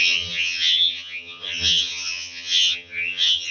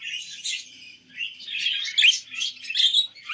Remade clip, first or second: first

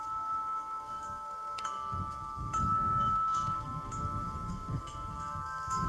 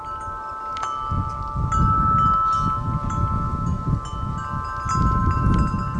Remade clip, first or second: first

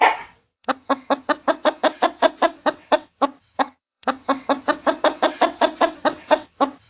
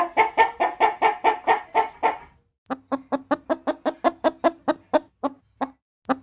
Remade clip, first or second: first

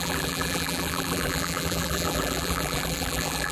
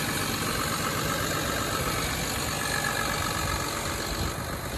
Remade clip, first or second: first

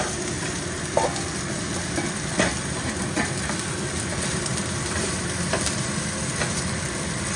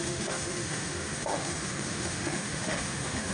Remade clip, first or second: second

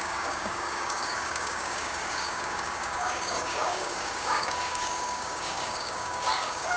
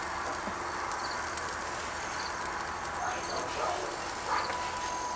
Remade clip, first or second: first